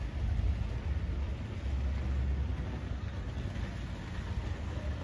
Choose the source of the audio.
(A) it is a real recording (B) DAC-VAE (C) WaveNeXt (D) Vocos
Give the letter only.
A